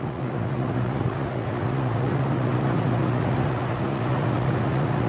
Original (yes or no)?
no